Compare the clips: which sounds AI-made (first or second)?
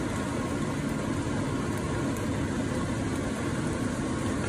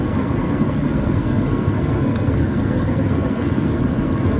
second